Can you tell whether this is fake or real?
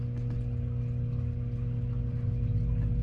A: real